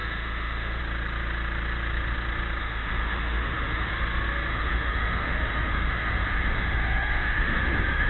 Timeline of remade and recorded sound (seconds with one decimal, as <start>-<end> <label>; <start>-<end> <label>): 0.0-0.8 remade; 0.8-2.6 recorded; 2.6-3.9 remade; 3.9-4.5 recorded; 4.5-8.1 remade